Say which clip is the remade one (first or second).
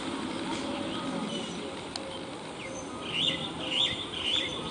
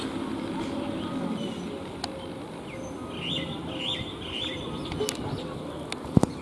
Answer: first